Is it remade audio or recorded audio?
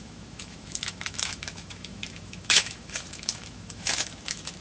remade